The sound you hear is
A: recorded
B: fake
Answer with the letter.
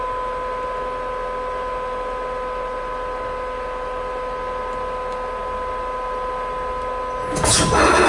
A